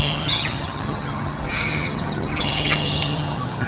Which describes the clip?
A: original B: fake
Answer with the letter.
B